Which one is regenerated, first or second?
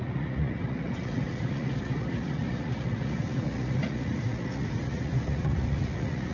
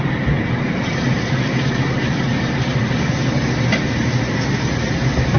first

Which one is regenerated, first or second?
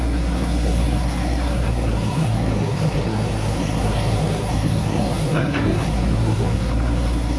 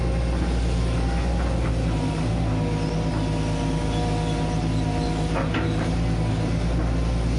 first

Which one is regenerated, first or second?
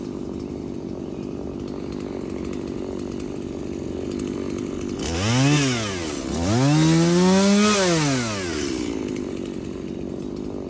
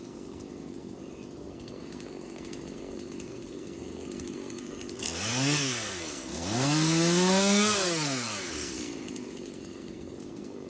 second